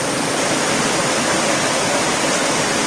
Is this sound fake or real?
real